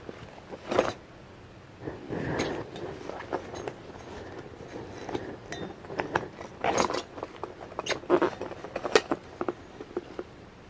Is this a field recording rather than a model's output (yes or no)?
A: yes